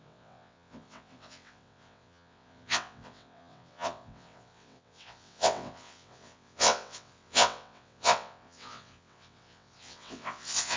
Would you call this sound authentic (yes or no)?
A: no